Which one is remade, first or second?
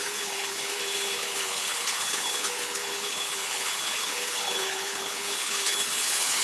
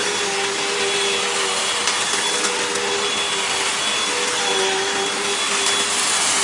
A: first